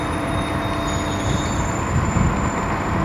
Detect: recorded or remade recorded